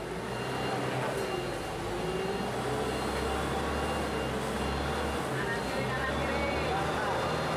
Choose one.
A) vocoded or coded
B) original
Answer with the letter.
B